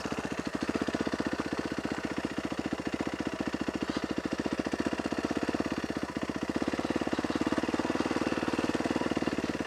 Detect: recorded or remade recorded